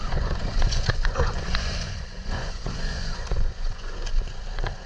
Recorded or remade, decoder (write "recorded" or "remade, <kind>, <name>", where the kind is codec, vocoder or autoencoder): remade, vocoder, Vocos